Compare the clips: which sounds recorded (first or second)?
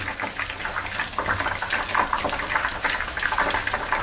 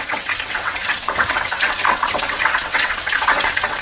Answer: first